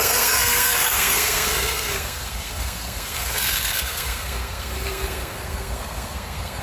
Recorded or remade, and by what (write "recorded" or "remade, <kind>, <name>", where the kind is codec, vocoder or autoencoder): remade, codec, SNAC